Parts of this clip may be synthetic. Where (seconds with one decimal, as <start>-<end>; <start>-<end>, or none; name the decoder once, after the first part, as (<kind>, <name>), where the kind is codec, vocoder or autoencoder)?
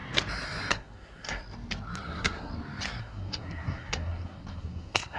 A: 0.7-1.4 (codec, SNAC); 2.0-2.5; 3.0-5.2